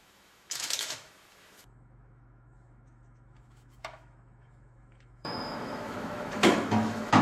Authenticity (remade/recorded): remade